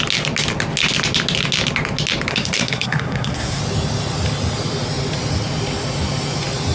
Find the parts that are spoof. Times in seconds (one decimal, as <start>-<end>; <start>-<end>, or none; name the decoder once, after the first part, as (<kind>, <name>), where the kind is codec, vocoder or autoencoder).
2.3-3.6 (codec, SNAC)